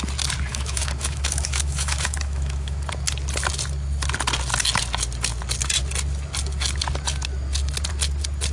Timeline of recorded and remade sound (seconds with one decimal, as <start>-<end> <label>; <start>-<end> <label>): 0.0-0.5 recorded; 0.5-2.9 remade; 2.9-8.5 recorded